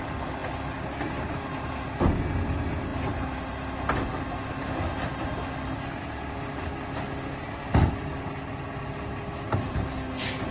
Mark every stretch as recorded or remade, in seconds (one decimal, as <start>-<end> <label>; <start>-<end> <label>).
0.0-10.5 recorded